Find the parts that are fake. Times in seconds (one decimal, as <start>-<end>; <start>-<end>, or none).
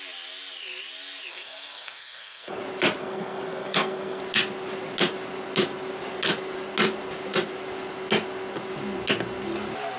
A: 1.3-2.6; 3.0-4.2